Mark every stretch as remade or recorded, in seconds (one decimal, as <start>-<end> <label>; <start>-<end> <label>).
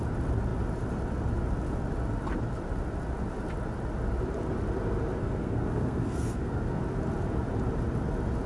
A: 0.0-5.2 recorded; 5.2-6.8 remade; 6.8-8.5 recorded